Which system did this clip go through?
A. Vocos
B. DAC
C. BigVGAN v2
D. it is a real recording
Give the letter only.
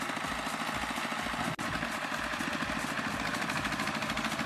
D